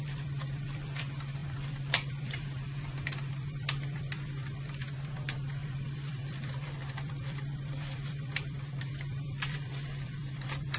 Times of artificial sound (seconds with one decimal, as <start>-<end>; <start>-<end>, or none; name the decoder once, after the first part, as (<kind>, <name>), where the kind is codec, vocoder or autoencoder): 0.0-10.8 (vocoder, BigVGAN v2)

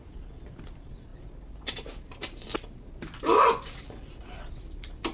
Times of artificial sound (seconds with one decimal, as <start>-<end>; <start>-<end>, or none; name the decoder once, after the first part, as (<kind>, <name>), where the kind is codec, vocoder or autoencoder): 0.0-1.1 (vocoder, BigVGAN v2); 4.2-5.1

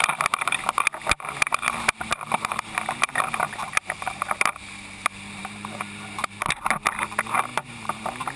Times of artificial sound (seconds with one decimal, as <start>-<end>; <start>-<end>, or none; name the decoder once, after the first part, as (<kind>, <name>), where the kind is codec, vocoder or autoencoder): 2.1-2.6 (vocoder, BigVGAN v2); 5.4-6.6; 7.5-8.4

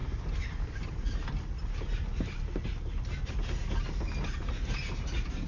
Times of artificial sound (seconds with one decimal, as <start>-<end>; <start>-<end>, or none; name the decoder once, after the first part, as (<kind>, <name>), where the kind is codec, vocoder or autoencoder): none

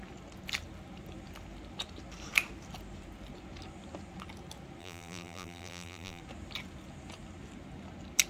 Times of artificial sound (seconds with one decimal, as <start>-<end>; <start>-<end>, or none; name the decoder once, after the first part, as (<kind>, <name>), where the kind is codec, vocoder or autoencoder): 4.8-6.2 (vocoder, BigVGAN v2)